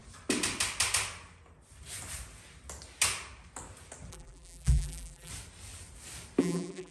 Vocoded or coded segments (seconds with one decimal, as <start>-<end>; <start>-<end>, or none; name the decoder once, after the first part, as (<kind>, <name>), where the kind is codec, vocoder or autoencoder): 4.1-5.3 (vocoder, BigVGAN v2); 6.4-6.9